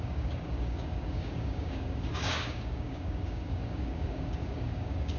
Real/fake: fake